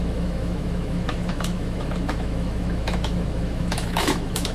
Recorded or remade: remade